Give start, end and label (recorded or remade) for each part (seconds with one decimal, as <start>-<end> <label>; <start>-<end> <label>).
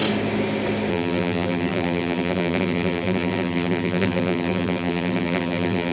0.0-0.9 recorded; 0.9-5.9 remade